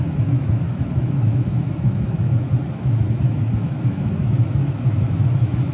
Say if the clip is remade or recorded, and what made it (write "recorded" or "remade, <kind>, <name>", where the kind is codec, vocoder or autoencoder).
remade, autoencoder, DAC-VAE